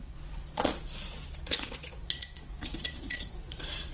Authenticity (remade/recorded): remade